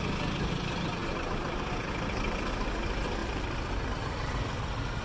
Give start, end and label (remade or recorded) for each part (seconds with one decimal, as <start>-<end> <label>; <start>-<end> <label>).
0.0-3.2 recorded; 3.2-3.8 remade; 3.8-5.0 recorded